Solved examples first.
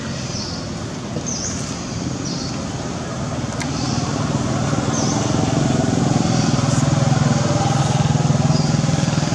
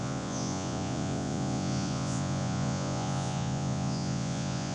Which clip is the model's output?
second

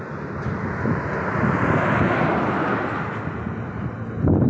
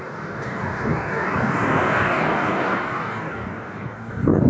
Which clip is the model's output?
second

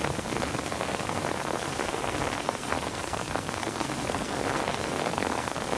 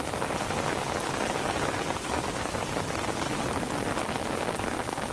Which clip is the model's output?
first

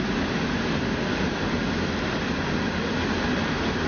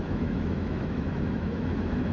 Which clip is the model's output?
second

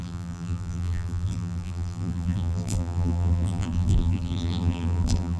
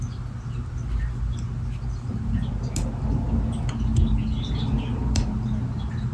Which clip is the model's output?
first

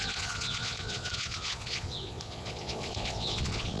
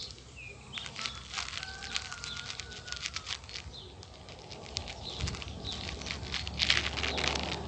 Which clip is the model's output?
first